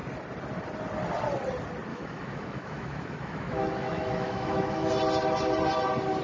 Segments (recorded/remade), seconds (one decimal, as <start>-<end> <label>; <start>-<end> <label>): 0.0-1.9 recorded; 1.9-4.9 remade; 4.9-6.2 recorded